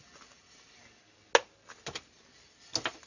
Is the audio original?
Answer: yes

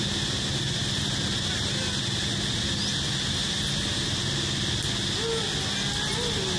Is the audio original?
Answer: yes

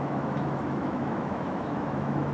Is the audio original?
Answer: no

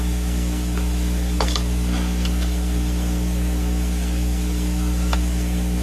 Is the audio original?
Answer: no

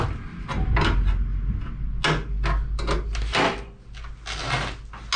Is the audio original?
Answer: yes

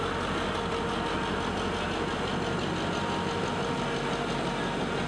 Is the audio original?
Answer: yes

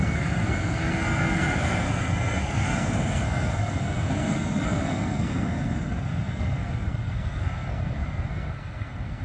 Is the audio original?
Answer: no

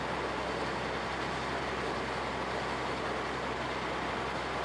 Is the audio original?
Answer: yes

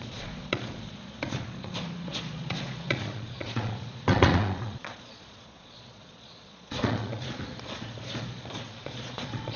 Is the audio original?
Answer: no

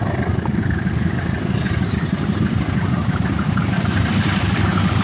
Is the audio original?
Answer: yes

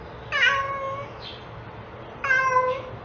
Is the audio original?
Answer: yes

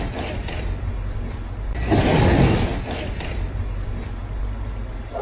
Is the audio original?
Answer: yes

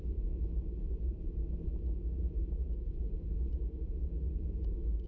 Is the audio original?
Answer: no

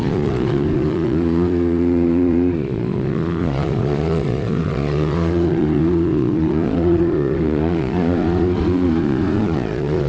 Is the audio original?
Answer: no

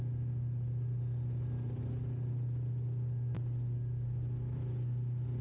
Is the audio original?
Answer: yes